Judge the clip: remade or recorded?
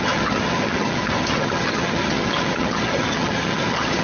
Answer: remade